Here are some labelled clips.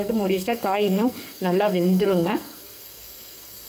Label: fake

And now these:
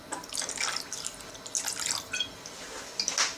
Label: real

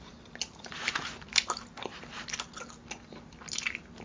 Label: real